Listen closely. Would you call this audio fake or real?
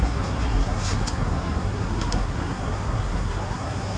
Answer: fake